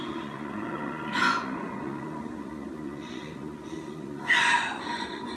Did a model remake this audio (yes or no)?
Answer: yes